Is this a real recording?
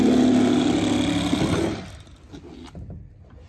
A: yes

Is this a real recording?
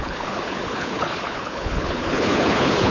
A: no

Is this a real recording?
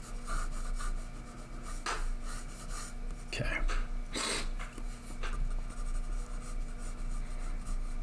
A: yes